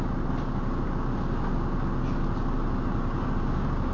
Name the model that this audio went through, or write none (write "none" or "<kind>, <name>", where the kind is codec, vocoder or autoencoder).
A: none